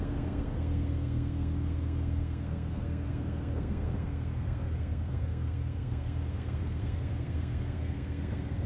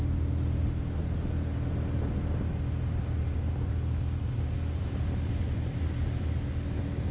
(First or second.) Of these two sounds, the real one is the second